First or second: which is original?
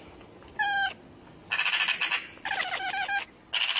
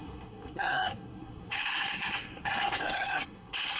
first